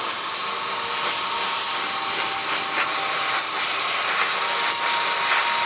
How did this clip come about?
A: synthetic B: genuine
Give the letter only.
B